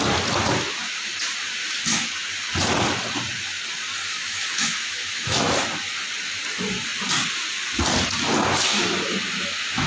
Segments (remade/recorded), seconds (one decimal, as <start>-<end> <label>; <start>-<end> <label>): 0.0-1.6 recorded; 1.6-2.1 remade; 2.1-4.1 recorded; 4.1-5.5 remade; 5.5-9.9 recorded